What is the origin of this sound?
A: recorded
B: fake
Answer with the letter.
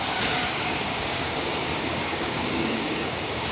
B